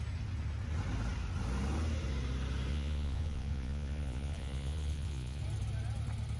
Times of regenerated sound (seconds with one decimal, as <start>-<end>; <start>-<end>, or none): 2.7-5.4